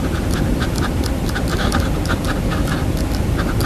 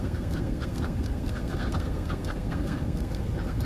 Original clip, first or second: first